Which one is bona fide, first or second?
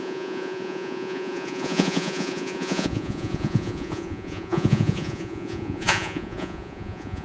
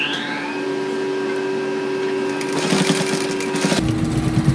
second